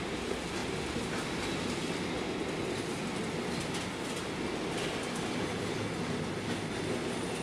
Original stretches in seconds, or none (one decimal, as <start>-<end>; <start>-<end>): 0.0-7.4